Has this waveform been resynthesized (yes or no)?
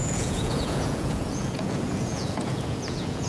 yes